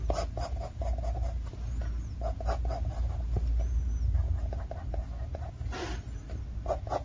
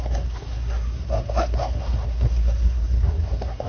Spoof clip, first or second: second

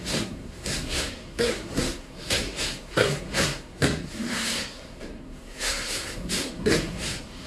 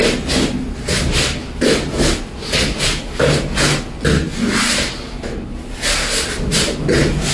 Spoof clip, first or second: first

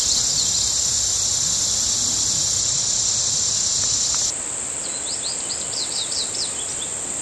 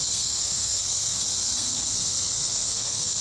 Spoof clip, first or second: second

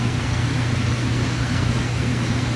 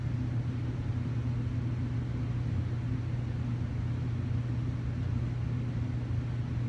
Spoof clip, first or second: first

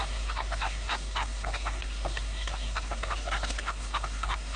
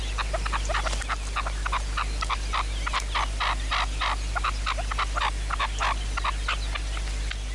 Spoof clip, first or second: first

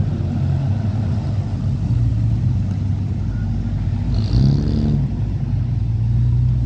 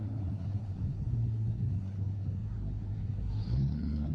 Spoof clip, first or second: second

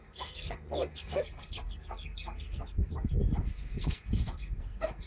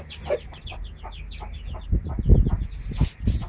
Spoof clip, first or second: first